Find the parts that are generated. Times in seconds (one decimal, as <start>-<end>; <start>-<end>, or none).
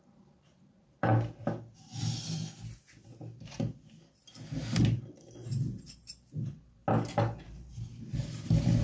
0.0-1.1; 4.8-6.8; 7.4-8.8